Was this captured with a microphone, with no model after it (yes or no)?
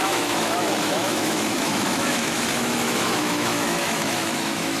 no